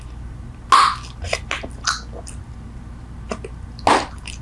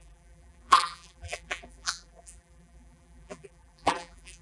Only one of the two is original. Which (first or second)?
first